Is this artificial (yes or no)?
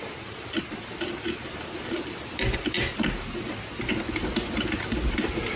no